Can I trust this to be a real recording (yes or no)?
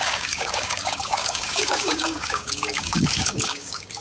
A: no